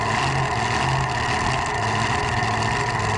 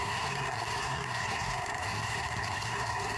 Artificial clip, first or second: second